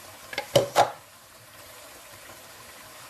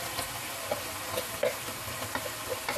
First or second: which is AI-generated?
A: first